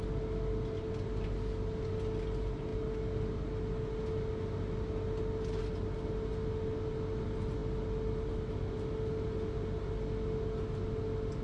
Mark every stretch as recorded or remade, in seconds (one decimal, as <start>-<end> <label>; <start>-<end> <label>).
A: 0.0-11.4 recorded